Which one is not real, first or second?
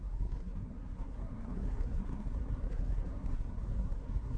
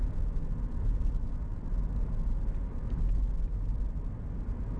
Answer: first